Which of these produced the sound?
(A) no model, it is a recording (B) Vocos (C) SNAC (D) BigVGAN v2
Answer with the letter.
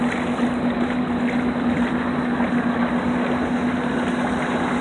A